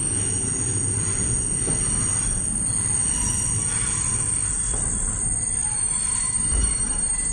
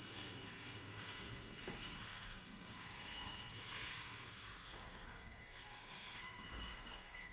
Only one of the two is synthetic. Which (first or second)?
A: second